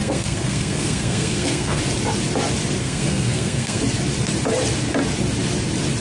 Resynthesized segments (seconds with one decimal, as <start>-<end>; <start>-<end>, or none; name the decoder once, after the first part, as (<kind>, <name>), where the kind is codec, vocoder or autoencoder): 0.0-1.8 (codec, SNAC); 2.8-3.8